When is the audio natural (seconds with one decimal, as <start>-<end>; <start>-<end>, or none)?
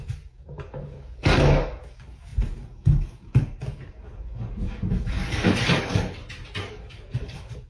6.2-6.7